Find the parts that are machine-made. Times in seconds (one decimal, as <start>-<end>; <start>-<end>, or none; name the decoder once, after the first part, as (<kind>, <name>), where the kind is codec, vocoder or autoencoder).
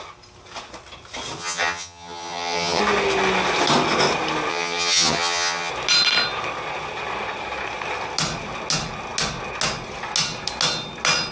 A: 1.4-2.8 (vocoder, HiFi-GAN); 4.5-5.7